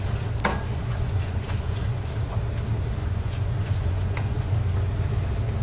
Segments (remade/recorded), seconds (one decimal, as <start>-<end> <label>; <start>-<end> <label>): 0.0-0.5 recorded; 0.5-2.1 remade; 2.1-3.0 recorded; 3.0-4.5 remade; 4.5-5.6 recorded